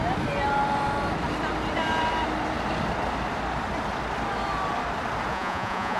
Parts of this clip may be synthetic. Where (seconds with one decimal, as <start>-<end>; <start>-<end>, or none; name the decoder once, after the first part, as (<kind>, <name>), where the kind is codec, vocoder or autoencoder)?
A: 5.3-6.0 (vocoder, Vocos)